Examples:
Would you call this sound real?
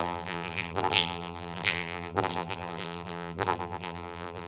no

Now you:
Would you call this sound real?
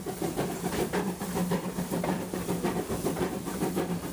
no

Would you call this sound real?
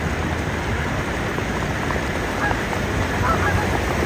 yes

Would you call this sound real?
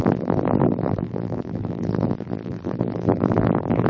no